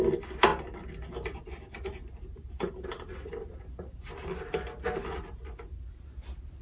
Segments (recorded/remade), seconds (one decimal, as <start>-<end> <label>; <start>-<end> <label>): 0.0-6.6 recorded